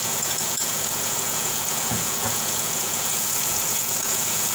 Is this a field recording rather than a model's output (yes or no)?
no